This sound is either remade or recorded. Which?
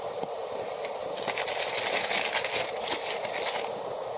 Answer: recorded